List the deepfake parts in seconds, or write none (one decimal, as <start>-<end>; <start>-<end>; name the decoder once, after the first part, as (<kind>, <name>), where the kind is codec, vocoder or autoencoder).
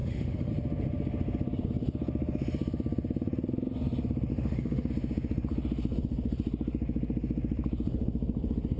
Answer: 0.0-0.5 (autoencoder, DAC-VAE); 4.3-4.9